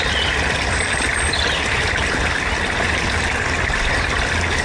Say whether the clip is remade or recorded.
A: recorded